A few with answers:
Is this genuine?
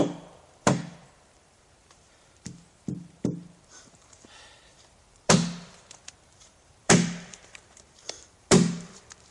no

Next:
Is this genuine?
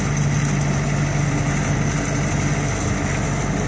yes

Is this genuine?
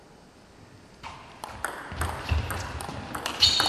yes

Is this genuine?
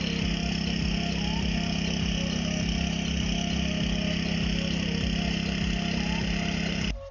yes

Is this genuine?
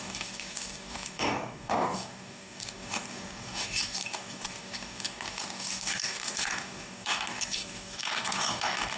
no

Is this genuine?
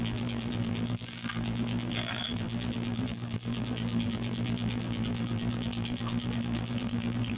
no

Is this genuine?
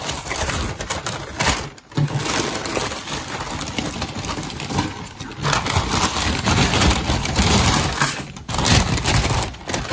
yes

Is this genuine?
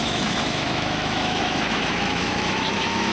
no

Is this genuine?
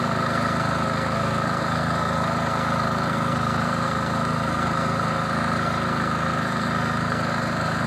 no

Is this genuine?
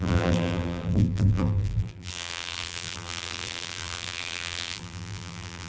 no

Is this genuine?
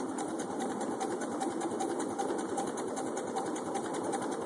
yes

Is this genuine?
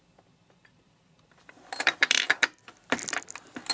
no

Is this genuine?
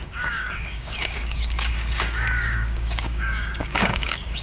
no